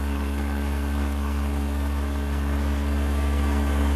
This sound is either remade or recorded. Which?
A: remade